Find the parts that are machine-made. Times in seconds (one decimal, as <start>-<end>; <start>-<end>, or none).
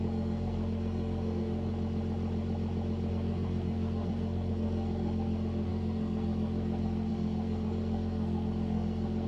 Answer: 0.0-1.7; 3.1-9.3